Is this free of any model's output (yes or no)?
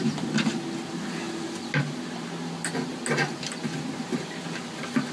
yes